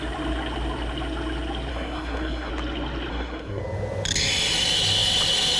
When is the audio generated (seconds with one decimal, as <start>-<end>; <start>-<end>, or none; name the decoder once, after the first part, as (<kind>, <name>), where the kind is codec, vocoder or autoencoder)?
1.7-2.5 (codec, SNAC); 3.1-3.6

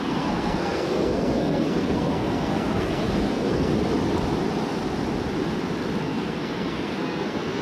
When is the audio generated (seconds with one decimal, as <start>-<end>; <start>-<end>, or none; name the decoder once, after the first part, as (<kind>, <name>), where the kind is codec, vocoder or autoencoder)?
0.0-3.7 (codec, SNAC); 6.0-7.6

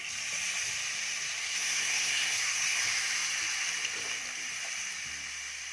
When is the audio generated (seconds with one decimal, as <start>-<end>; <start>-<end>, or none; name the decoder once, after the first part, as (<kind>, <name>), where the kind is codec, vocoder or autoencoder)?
1.4-2.8 (codec, SNAC)

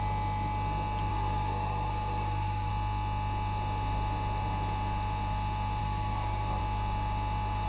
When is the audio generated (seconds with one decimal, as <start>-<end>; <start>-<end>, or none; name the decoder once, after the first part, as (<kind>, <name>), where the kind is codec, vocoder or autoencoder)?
1.1-2.7 (codec, SNAC); 5.8-6.6

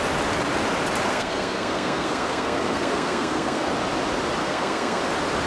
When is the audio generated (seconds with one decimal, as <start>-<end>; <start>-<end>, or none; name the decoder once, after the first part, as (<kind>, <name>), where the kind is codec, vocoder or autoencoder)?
1.1-3.7 (codec, SNAC); 4.4-5.0

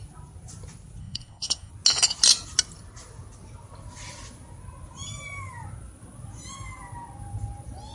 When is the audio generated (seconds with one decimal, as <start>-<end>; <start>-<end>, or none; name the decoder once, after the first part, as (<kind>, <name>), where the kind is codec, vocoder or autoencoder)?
1.0-1.7 (codec, SNAC)

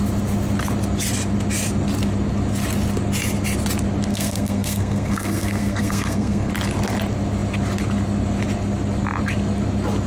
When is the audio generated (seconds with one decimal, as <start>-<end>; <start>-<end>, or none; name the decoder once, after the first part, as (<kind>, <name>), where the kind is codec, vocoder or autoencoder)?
4.1-6.5 (codec, SNAC)

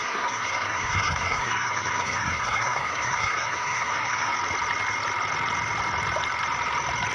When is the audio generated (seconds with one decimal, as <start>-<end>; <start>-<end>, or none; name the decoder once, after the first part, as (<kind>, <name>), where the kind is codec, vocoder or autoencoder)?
0.0-4.3 (codec, SNAC)